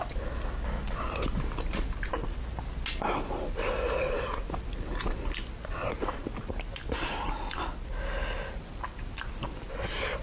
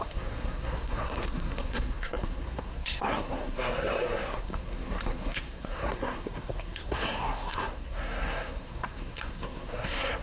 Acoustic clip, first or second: first